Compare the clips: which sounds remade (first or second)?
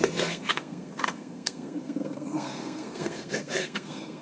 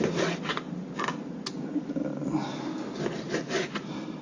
first